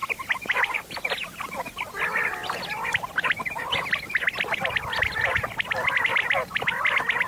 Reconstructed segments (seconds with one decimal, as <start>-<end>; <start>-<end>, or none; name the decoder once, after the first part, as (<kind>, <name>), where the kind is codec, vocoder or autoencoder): none